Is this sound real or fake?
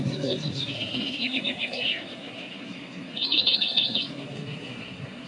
fake